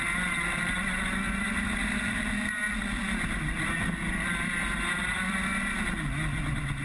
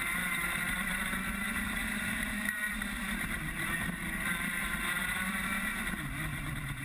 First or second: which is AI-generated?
second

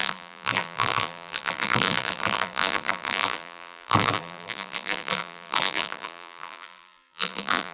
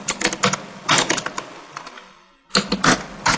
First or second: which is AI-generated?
first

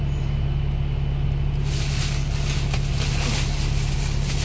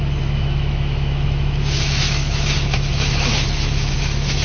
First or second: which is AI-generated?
second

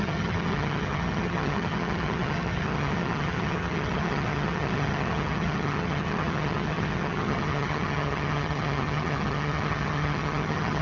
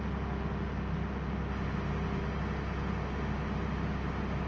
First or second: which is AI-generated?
first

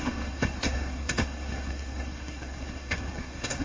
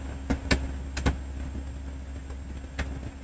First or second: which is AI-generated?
first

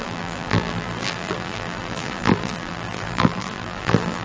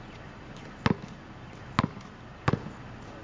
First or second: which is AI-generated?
first